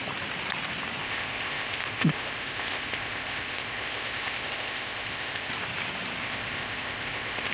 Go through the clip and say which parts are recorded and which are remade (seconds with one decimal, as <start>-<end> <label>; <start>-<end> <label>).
0.0-1.0 recorded; 1.0-5.5 remade; 5.5-6.2 recorded; 6.2-7.5 remade